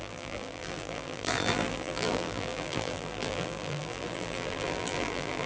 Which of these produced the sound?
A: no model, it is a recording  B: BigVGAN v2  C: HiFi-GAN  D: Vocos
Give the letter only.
B